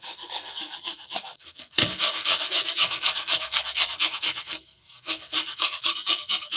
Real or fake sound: fake